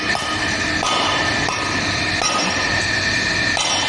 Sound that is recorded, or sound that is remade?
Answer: recorded